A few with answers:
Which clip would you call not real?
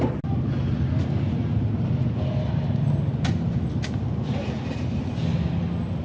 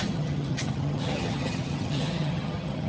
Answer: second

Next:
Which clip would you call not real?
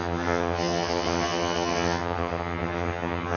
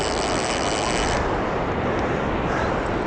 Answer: first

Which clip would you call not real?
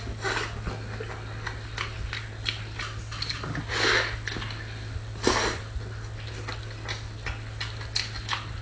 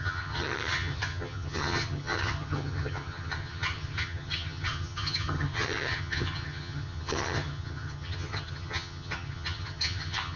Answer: second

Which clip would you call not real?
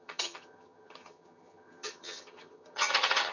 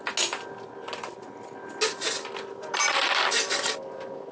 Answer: first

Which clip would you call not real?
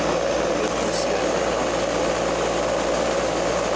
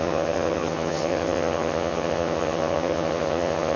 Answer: second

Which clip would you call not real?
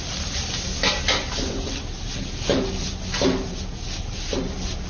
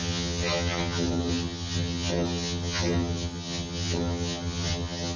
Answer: second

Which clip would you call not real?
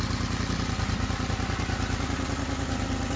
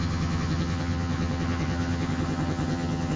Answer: second